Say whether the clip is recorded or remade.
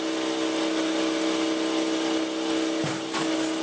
recorded